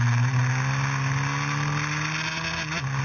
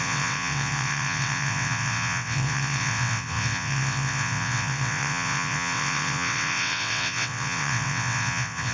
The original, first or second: first